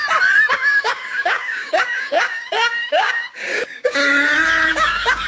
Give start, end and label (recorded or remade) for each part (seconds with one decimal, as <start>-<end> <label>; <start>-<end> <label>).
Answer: 0.0-0.5 recorded; 0.5-4.0 remade; 4.0-4.7 recorded; 4.7-5.3 remade